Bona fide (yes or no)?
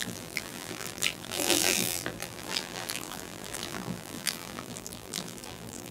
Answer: no